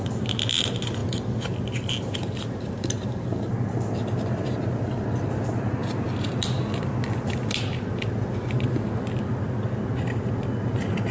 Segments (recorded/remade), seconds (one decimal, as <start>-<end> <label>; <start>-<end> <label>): 0.0-11.1 recorded